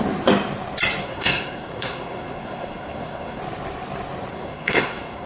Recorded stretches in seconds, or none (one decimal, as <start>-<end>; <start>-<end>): 0.0-1.0; 3.4-4.3